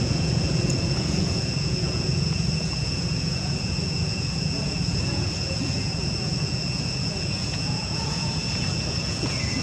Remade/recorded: remade